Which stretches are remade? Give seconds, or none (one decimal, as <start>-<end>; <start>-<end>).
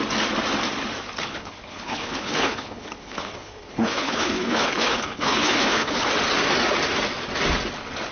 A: 1.2-6.1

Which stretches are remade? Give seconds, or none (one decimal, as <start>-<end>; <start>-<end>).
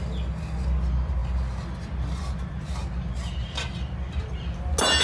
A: none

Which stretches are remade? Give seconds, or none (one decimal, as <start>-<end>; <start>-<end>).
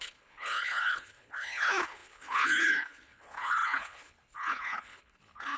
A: 0.0-5.6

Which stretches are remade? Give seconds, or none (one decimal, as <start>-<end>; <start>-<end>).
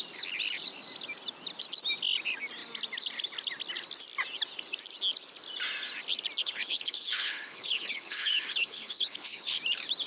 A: 6.4-9.6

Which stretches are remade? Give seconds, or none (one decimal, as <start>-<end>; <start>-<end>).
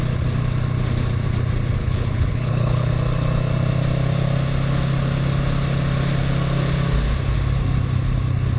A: 1.8-2.9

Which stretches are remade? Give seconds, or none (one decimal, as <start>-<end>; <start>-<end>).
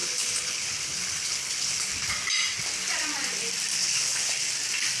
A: 0.0-1.9; 3.8-4.5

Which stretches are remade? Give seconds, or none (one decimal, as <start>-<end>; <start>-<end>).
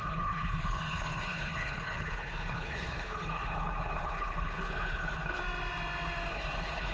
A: 0.0-5.4; 6.3-6.9